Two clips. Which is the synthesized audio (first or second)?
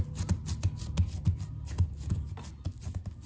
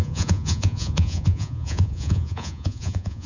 second